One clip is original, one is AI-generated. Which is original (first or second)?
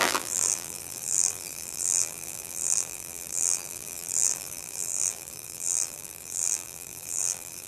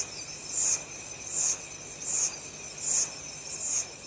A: second